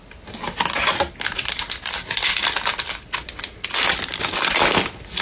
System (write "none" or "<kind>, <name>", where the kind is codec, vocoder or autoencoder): none